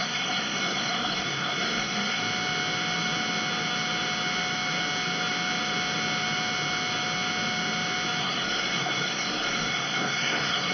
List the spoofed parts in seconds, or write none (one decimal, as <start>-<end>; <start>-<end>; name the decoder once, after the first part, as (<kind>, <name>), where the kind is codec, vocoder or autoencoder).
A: 0.0-2.2 (codec, SNAC); 8.2-10.7